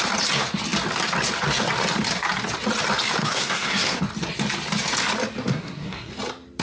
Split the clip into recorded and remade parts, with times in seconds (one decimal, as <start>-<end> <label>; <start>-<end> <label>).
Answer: 0.0-3.2 recorded; 3.2-4.0 remade; 4.0-5.5 recorded; 5.5-6.1 remade; 6.1-6.6 recorded